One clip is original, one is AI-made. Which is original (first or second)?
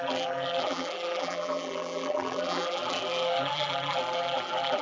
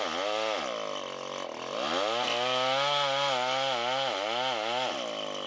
second